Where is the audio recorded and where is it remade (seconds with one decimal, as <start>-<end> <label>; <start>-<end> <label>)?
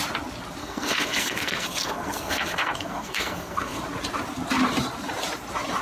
0.0-0.6 recorded; 0.6-3.8 remade; 3.8-5.8 recorded